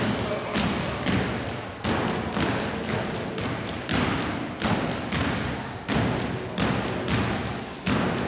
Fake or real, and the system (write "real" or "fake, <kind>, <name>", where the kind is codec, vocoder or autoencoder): real